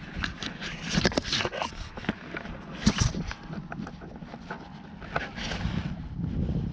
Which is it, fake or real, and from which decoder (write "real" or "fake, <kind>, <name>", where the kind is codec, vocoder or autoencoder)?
real